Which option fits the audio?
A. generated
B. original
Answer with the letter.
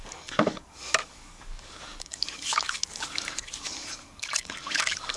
A